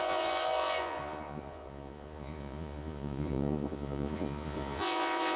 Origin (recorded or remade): remade